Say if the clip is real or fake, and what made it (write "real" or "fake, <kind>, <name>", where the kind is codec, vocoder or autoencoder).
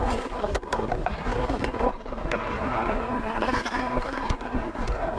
fake, codec, SNAC